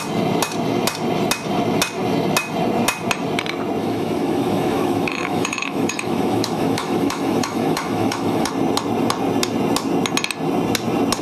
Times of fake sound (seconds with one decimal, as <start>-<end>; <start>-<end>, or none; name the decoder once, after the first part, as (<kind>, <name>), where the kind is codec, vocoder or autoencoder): 3.8-8.5 (autoencoder, DAC-VAE)